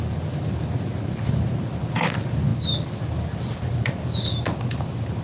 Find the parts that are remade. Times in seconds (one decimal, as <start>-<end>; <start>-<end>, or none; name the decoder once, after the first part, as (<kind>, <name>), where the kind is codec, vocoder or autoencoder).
none